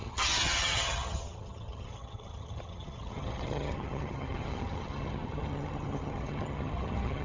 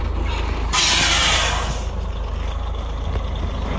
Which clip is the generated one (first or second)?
first